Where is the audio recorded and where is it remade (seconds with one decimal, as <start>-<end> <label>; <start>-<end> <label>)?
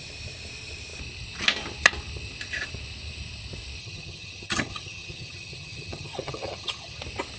0.0-3.8 recorded; 3.8-7.0 remade; 7.0-7.4 recorded